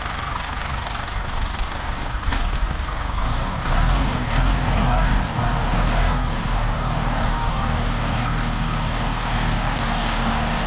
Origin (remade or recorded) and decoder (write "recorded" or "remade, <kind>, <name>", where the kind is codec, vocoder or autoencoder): remade, codec, DAC